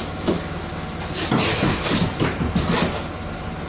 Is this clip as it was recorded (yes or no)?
yes